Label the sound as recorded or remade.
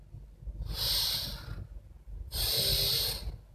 recorded